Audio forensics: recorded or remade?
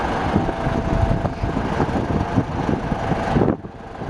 recorded